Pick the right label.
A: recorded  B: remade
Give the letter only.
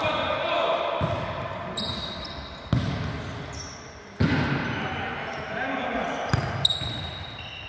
A